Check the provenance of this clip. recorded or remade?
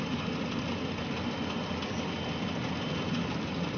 recorded